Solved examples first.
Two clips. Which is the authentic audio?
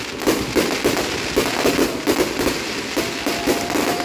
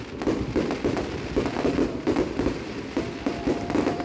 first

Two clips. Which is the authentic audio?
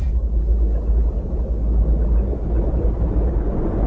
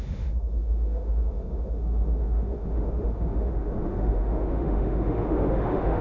first